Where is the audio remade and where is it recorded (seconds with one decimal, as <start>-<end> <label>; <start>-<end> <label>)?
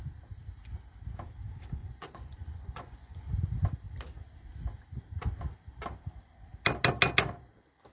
0.0-1.8 recorded; 1.8-3.3 remade; 3.3-7.9 recorded